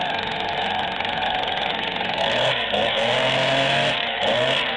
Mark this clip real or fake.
fake